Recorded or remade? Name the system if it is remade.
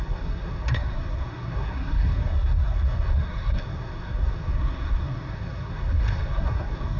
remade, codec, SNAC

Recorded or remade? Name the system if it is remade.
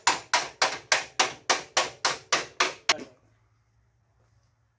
recorded